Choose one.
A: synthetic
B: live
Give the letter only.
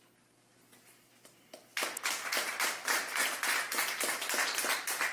B